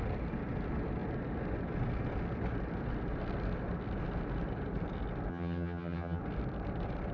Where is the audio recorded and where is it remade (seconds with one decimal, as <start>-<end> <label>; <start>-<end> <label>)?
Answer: 0.0-5.3 recorded; 5.3-6.2 remade; 6.2-7.1 recorded